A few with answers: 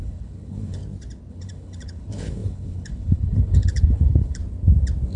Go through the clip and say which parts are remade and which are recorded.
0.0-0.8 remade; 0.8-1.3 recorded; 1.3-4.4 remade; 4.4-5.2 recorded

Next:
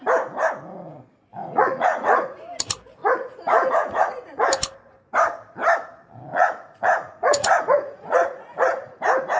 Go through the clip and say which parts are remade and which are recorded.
0.0-1.4 recorded; 1.4-2.4 remade; 2.4-3.0 recorded; 3.0-4.4 remade; 4.4-6.3 recorded; 6.3-9.0 remade; 9.0-9.4 recorded